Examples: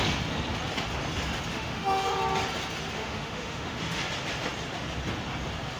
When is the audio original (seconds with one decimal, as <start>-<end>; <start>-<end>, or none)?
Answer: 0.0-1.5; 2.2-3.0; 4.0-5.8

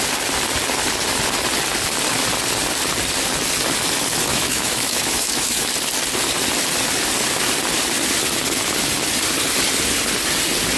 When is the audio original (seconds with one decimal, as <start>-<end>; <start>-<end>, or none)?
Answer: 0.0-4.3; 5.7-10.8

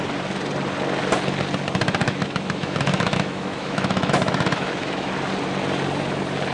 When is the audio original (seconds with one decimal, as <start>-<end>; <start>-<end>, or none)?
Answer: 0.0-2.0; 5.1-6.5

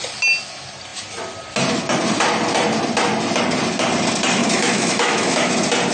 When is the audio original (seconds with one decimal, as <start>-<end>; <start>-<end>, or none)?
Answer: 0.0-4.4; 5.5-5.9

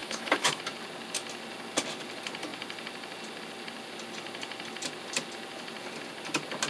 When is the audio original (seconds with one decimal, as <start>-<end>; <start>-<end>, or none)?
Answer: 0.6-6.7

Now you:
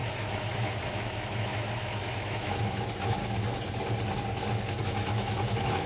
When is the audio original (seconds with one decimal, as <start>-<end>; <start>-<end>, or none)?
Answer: 3.2-4.8